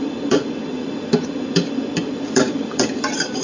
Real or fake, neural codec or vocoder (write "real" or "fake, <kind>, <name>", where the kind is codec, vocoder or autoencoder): fake, vocoder, BigVGAN v2